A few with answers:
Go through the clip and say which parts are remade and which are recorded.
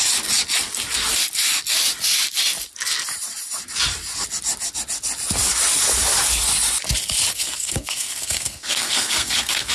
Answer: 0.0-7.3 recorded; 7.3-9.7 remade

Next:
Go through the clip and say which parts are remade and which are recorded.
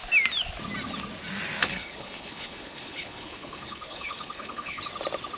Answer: 0.0-1.6 recorded; 1.6-4.8 remade; 4.8-5.4 recorded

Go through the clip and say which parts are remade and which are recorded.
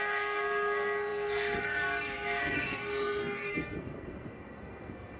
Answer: 0.0-5.2 remade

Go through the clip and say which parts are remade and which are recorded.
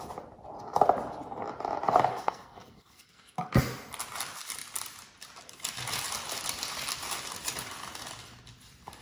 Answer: 0.0-2.1 recorded; 2.1-3.6 remade; 3.6-9.0 recorded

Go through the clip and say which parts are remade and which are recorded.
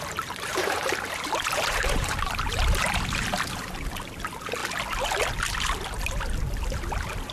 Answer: 0.0-0.5 recorded; 0.5-4.1 remade; 4.1-7.3 recorded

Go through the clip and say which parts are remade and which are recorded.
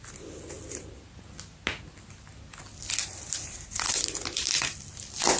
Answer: 0.0-3.0 recorded; 3.0-4.6 remade; 4.6-5.4 recorded